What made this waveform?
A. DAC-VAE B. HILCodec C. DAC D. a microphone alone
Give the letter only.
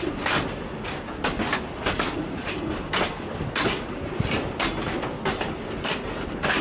D